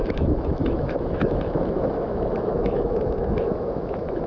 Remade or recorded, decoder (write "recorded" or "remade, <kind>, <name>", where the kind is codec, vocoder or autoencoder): remade, autoencoder, DAC-VAE